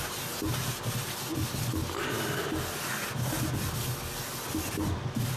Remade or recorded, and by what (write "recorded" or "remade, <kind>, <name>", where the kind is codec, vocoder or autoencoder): recorded